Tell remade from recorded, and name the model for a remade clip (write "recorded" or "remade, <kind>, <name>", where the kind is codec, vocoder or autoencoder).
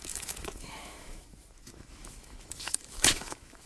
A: remade, autoencoder, DAC-VAE